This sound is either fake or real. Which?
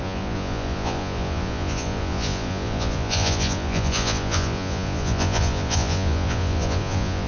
fake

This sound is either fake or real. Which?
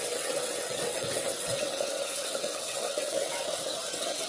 fake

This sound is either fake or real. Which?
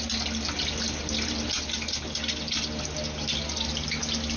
real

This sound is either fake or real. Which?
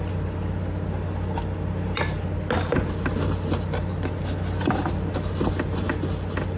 real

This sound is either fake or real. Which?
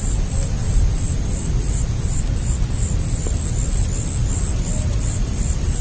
real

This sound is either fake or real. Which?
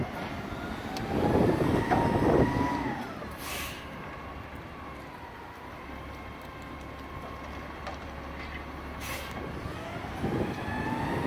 real